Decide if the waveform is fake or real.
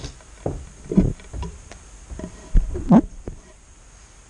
real